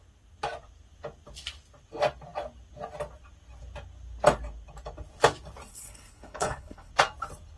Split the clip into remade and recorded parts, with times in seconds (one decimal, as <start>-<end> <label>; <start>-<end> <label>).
0.0-5.7 recorded; 5.7-6.9 remade; 6.9-7.6 recorded